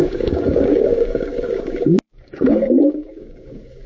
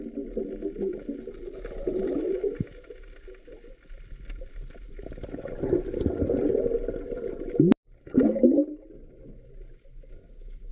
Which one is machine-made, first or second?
first